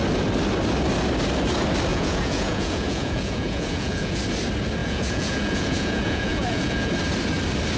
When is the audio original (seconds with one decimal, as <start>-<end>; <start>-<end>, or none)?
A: 0.0-1.9; 4.2-4.8; 6.9-7.8